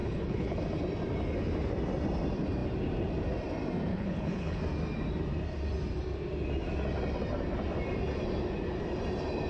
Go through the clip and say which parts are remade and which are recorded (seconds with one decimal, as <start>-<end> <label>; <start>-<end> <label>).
0.0-0.6 remade; 0.6-3.9 recorded; 3.9-4.6 remade; 4.6-9.5 recorded